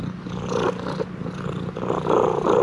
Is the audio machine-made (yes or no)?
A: no